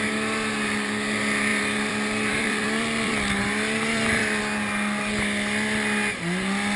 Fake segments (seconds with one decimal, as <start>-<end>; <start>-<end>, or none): 1.5-4.4